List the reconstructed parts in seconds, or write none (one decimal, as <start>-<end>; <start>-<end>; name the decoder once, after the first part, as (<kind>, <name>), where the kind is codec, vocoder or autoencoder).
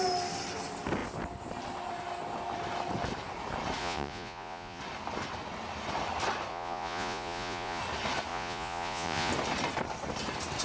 3.8-4.8 (vocoder, Vocos); 6.5-7.8; 8.3-9.3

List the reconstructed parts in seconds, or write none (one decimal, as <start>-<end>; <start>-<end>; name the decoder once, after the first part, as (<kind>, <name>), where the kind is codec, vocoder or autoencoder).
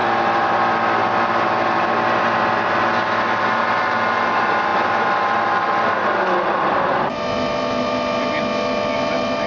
none